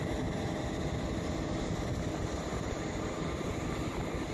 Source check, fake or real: real